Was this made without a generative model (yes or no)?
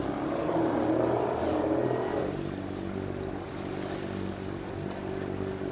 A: yes